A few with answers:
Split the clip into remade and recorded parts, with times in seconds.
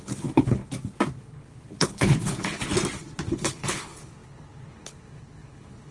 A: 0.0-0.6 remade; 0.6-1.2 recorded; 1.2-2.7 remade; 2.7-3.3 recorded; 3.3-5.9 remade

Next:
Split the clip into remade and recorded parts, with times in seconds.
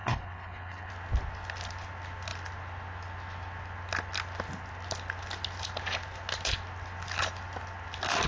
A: 0.0-0.9 remade; 0.9-8.3 recorded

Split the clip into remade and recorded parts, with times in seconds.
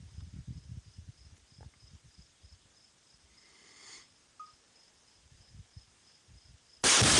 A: 0.0-7.2 recorded